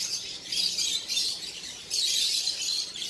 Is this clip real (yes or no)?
no